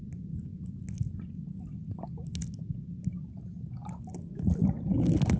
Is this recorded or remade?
recorded